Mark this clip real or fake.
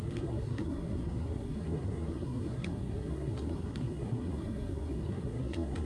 fake